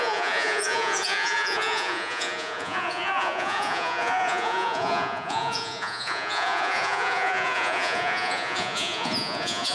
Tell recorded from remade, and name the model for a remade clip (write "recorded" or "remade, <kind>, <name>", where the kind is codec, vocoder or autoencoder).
remade, vocoder, Vocos